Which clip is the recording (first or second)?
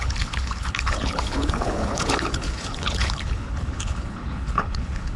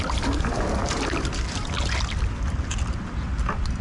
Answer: second